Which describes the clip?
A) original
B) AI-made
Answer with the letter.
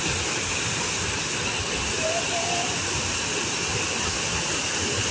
A